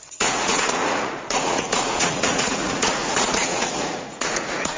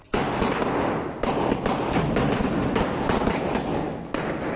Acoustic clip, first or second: second